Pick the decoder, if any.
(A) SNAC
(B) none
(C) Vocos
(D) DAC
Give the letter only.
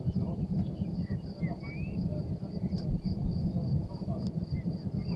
B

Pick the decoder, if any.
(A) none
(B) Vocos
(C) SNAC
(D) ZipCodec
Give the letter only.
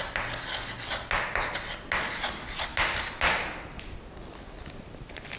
A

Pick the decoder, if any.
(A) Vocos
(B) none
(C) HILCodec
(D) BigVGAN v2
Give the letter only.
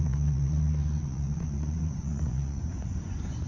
A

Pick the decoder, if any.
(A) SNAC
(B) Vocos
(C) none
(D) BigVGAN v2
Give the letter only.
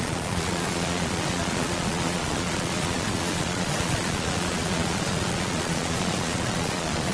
B